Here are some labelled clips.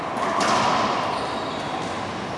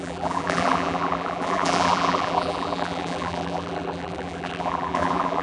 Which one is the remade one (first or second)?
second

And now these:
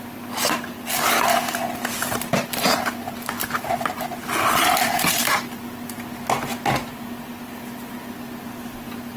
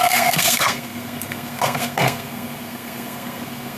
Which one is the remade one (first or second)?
second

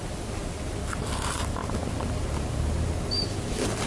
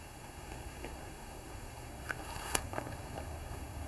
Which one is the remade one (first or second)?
second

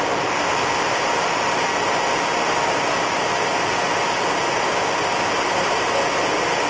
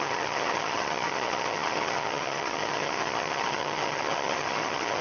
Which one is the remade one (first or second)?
second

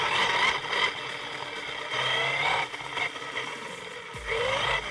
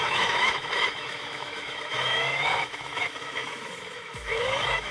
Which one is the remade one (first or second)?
second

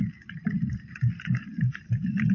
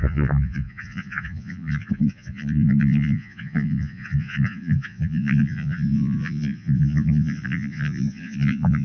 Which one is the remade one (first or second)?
second